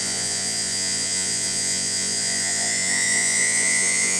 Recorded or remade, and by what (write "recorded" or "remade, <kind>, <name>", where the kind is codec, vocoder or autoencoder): remade, vocoder, Vocos